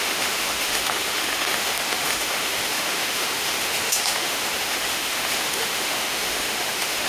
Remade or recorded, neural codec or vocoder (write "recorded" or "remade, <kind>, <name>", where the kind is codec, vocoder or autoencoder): remade, autoencoder, DAC-VAE